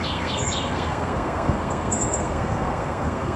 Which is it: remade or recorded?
remade